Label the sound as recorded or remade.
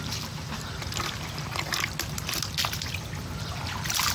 recorded